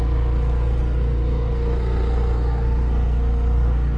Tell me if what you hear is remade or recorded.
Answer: remade